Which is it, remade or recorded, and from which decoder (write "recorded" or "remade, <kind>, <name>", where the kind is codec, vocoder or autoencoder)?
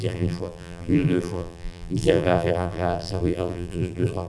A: remade, vocoder, BigVGAN v2